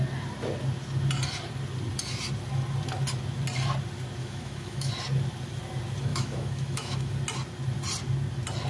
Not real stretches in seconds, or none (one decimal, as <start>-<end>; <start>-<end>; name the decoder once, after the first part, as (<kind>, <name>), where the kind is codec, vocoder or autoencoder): 4.2-4.9 (autoencoder, DAC-VAE); 6.1-7.1